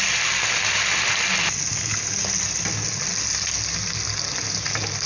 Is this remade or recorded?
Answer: recorded